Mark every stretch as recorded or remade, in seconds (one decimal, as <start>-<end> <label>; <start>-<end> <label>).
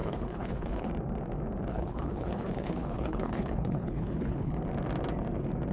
0.0-0.9 remade; 0.9-1.7 recorded; 1.7-4.5 remade; 4.5-5.7 recorded